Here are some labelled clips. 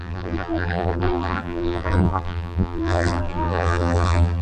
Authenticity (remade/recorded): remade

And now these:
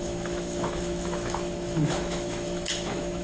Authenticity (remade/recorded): remade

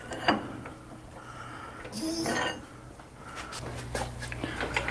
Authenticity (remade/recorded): recorded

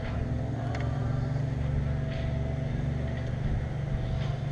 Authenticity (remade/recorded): recorded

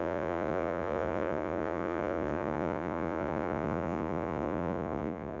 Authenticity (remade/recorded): remade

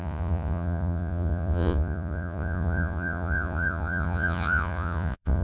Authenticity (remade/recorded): remade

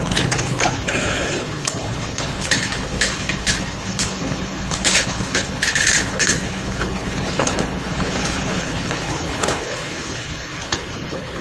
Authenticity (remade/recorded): remade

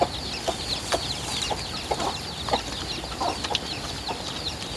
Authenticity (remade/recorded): recorded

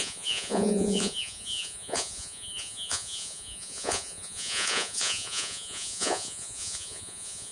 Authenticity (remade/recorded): remade